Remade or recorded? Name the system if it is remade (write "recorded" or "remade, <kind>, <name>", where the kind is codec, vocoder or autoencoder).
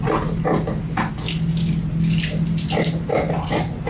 recorded